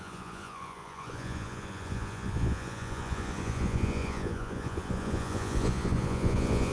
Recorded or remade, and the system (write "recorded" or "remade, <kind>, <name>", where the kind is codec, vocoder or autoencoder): remade, vocoder, Vocos